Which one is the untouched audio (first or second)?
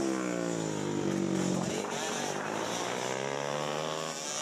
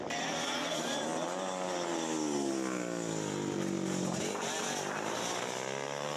first